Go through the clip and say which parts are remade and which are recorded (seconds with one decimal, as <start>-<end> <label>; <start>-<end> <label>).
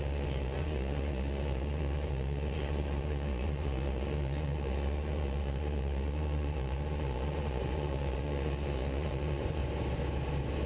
0.0-9.6 remade; 9.6-10.7 recorded